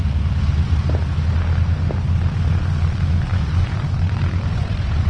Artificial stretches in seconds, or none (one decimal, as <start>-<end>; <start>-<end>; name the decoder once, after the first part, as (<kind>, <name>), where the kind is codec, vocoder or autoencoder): 3.3-5.1 (vocoder, Vocos)

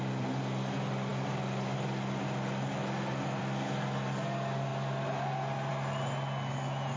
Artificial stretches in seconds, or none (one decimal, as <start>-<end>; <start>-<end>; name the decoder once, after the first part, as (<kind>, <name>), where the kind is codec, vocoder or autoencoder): none

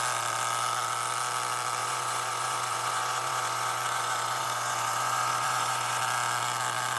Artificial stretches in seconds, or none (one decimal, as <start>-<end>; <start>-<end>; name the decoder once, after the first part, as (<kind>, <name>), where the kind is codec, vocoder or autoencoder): 1.8-6.0 (vocoder, Vocos)

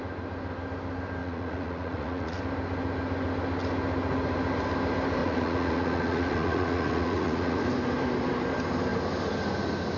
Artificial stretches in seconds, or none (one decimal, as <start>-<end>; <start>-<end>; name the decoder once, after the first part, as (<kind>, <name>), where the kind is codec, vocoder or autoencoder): 1.2-2.4 (vocoder, Vocos); 5.2-7.6

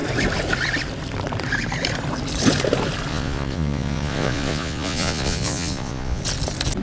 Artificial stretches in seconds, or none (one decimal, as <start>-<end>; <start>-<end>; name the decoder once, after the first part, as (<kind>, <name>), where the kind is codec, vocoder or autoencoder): 3.1-6.2 (vocoder, Vocos)

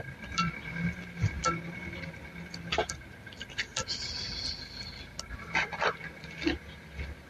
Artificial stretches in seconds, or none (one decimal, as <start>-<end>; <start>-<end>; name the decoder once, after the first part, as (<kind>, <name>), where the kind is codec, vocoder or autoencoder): none

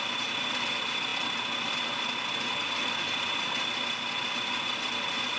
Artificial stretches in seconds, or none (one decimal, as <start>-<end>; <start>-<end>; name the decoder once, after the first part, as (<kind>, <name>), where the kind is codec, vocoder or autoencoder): none

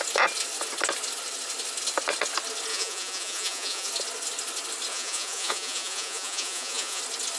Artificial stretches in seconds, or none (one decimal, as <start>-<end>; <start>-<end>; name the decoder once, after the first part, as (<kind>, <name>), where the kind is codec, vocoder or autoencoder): 2.7-3.9 (vocoder, Vocos); 4.9-7.0